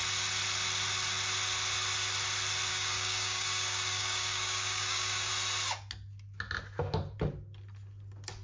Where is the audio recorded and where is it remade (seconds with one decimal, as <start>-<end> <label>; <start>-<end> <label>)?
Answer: 0.0-2.7 recorded; 2.7-5.3 remade; 5.3-8.4 recorded